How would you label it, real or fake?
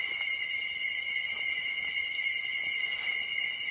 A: real